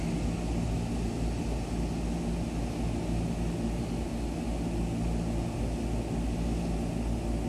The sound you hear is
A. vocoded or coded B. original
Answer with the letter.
B